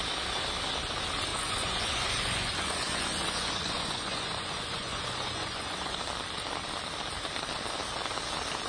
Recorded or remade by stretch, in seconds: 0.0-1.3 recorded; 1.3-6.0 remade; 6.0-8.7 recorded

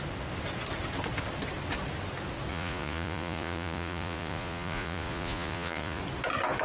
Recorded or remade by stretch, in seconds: 0.0-2.5 recorded; 2.5-6.0 remade; 6.0-6.6 recorded

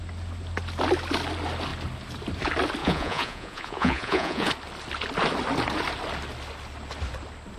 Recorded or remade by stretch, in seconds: 0.0-2.8 recorded; 2.8-4.5 remade; 4.5-7.6 recorded